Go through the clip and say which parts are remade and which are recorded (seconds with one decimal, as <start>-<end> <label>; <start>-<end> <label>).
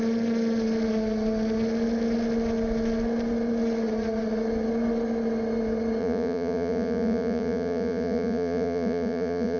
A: 0.0-6.0 recorded; 6.0-9.6 remade